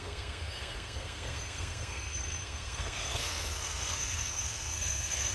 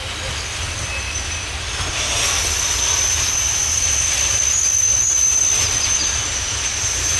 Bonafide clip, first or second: second